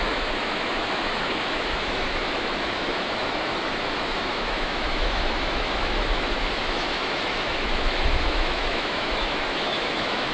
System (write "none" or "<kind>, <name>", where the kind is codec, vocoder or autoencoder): autoencoder, DAC-VAE